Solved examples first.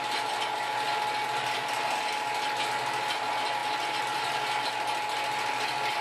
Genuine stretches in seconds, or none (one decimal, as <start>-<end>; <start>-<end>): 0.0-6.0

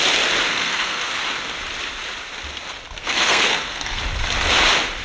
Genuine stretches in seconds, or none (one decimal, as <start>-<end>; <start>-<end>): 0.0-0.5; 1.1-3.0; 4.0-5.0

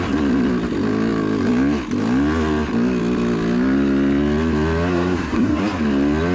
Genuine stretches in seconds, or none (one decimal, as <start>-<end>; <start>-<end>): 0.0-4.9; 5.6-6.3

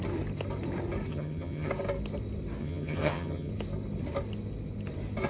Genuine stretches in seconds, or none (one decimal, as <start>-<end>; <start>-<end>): 0.0-1.1; 1.7-2.6; 3.5-5.3

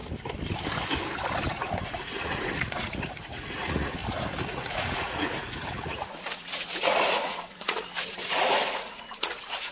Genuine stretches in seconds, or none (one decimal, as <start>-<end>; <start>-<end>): 0.0-1.5; 4.0-4.5

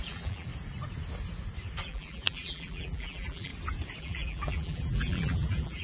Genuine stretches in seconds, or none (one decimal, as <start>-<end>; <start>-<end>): 0.5-1.8; 3.5-4.0

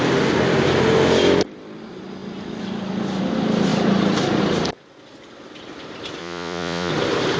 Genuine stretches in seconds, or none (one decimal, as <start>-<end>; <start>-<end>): 0.0-6.2; 6.9-7.4